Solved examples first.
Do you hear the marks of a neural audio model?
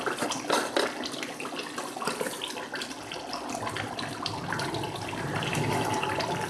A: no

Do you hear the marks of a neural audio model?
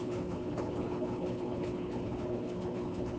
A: yes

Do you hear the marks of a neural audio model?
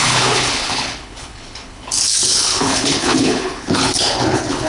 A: yes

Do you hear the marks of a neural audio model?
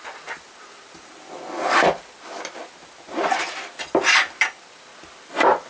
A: no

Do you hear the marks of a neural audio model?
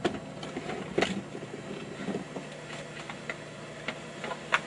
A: no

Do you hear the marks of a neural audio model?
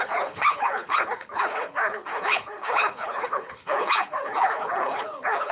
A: yes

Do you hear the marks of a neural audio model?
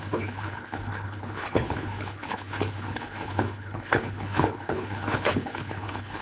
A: yes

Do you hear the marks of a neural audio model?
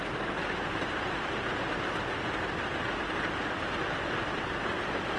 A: no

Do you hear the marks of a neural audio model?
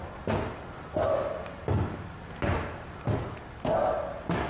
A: no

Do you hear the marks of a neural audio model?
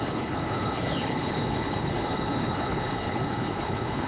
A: yes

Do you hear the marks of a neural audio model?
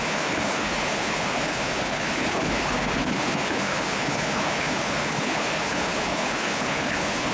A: yes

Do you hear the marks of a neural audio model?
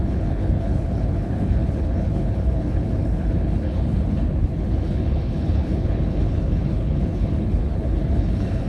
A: yes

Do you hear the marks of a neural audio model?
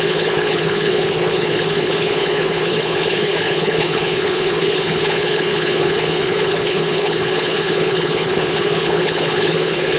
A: yes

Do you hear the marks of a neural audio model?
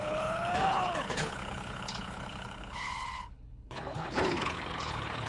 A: yes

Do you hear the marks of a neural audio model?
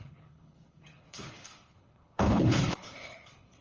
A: yes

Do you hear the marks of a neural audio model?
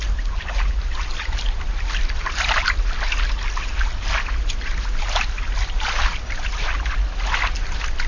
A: no